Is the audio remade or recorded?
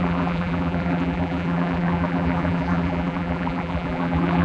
remade